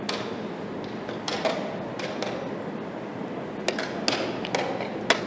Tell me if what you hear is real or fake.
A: real